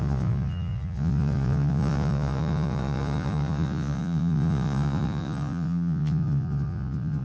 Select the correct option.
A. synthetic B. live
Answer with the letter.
A